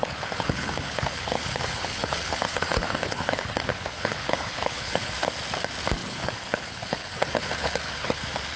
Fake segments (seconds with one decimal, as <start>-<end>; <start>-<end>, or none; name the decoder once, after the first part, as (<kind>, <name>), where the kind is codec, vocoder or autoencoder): 0.0-5.1 (codec, HILCodec); 6.0-8.2